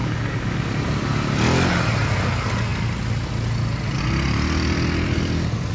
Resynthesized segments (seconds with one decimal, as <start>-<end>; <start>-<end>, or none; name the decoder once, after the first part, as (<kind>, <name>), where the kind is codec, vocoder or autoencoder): 0.0-0.7 (codec, DAC)